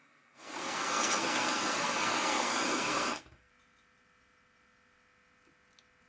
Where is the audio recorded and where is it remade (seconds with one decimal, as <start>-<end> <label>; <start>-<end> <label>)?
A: 0.0-3.5 remade; 3.5-6.1 recorded